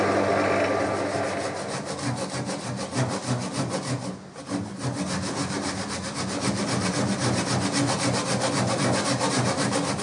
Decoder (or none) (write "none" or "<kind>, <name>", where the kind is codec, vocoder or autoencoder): none